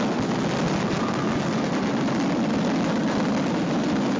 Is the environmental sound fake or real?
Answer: real